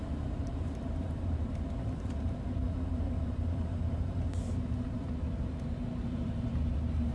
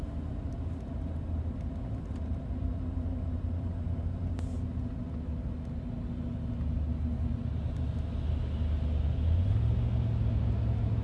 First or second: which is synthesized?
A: first